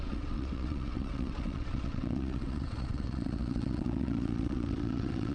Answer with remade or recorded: remade